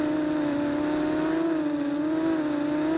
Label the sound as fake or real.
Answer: real